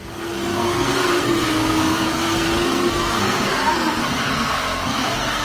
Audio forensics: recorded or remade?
remade